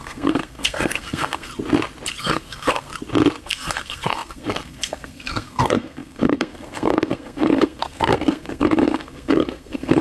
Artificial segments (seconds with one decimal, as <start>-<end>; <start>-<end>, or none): 0.0-1.5; 2.2-2.9; 3.4-10.0